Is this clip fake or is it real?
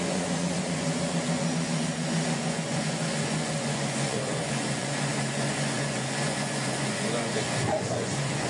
fake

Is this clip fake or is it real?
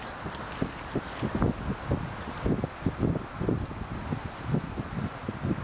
real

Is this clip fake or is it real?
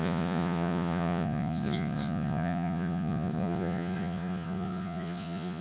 fake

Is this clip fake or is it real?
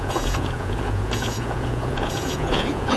fake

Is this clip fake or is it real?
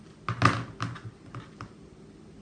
real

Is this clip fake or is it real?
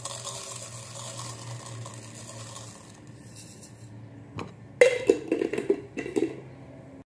real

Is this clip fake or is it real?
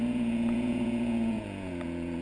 fake